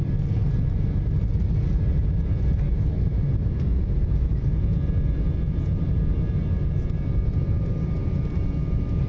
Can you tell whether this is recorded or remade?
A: recorded